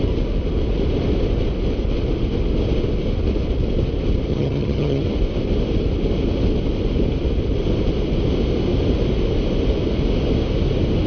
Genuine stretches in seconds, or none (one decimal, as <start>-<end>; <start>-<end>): 0.0-4.3; 5.0-11.1